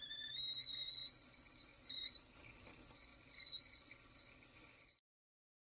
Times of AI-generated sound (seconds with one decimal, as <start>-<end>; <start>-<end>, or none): none